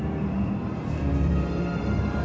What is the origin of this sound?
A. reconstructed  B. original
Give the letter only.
A